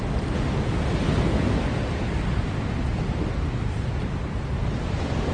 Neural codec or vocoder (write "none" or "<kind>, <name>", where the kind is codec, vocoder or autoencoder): none